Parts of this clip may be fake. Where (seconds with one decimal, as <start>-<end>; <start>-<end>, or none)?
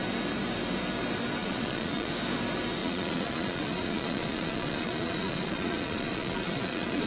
1.4-2.1; 2.8-7.1